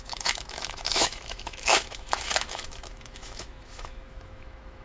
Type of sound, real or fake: fake